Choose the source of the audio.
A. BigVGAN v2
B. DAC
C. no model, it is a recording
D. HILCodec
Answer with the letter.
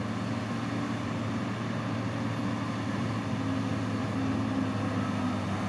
C